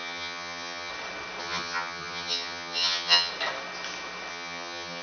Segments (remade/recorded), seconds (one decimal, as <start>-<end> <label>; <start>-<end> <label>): 0.0-0.9 remade; 0.9-1.4 recorded; 1.4-3.3 remade; 3.3-4.3 recorded; 4.3-5.0 remade